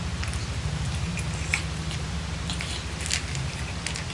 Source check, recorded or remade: recorded